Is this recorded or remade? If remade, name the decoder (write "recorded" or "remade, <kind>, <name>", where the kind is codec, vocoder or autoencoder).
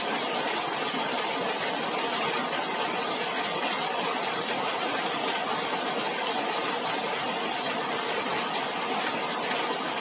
recorded